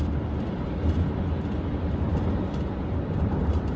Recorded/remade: recorded